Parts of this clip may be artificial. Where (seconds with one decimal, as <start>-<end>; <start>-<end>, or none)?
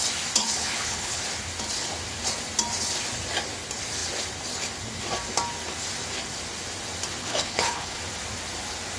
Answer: 0.4-1.2; 7.2-8.0